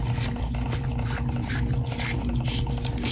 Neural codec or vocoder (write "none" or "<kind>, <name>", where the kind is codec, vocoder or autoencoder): none